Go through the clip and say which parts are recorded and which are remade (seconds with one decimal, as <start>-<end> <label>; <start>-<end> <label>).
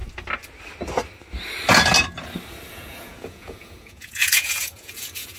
0.0-2.7 recorded; 2.7-5.4 remade